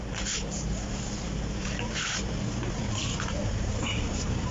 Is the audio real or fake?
fake